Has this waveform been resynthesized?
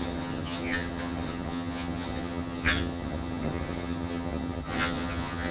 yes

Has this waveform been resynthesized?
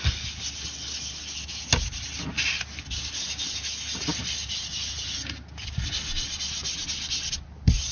no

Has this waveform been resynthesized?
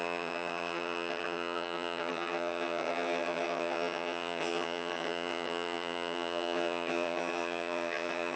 yes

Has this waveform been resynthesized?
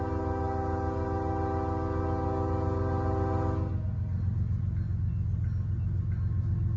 no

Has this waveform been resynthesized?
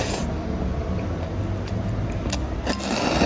no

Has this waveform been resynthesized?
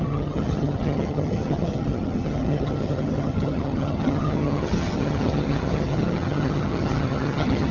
yes